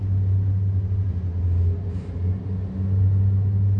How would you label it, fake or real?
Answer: real